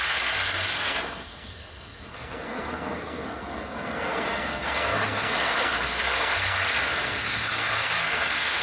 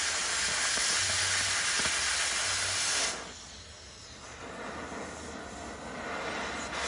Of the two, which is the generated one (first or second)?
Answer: first